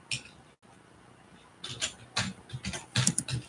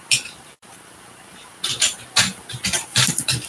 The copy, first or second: second